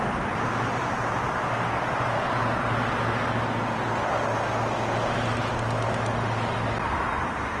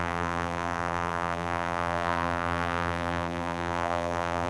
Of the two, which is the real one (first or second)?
first